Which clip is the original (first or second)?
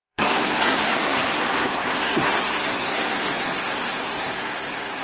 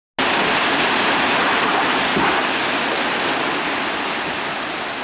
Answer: second